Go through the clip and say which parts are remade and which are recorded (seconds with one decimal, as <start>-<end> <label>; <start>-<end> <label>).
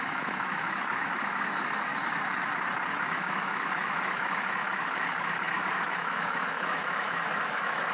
0.0-1.9 remade; 1.9-2.9 recorded; 2.9-7.9 remade